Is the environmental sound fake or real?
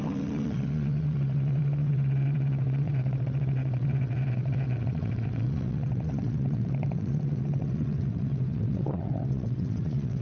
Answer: fake